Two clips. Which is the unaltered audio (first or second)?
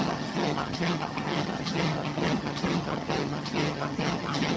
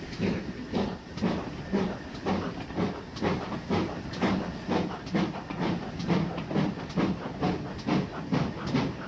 second